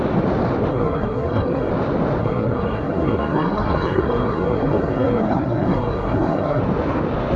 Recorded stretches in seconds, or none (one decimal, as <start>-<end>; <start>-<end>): 0.0-0.7; 1.7-2.2; 6.6-7.4